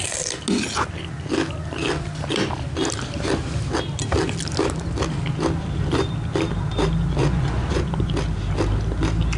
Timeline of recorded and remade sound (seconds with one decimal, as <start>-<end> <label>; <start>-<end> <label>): 0.0-7.2 recorded; 7.2-8.1 remade; 8.1-9.4 recorded